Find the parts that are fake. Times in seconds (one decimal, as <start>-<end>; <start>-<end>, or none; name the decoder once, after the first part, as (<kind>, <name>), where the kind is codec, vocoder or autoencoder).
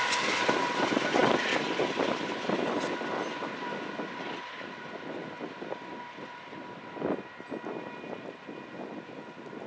none